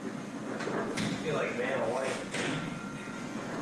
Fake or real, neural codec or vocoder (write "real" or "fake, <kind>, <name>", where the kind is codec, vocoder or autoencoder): fake, vocoder, Vocos